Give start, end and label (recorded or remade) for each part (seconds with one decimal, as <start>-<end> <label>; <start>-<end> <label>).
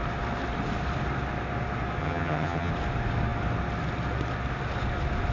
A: 0.0-2.0 recorded; 2.0-2.7 remade; 2.7-5.3 recorded